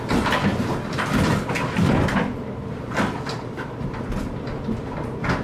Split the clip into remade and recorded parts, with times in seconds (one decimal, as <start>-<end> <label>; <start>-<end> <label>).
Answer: 0.0-5.4 recorded